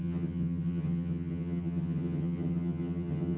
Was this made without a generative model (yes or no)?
no